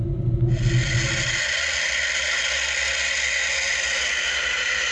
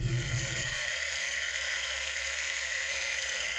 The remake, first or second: second